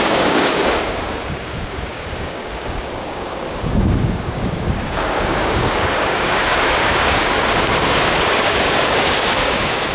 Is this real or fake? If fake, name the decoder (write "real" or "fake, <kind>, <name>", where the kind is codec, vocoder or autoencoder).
fake, codec, DAC